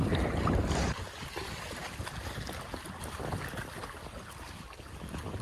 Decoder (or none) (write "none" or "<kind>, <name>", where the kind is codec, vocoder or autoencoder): none